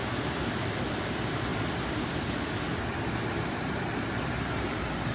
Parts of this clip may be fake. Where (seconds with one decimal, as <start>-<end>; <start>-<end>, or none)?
0.5-1.5; 3.0-5.1